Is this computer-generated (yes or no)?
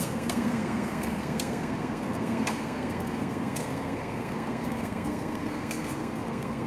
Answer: yes